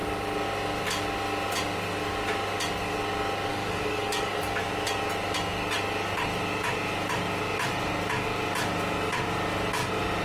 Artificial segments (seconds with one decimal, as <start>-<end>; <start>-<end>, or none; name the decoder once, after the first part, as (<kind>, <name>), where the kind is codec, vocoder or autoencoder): 3.5-4.6 (codec, DAC)